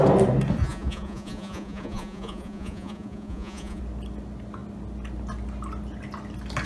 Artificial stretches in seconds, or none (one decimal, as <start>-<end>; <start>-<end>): 0.6-3.8